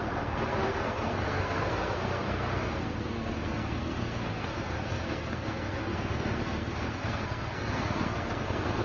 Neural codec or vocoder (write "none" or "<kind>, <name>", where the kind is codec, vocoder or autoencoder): codec, SNAC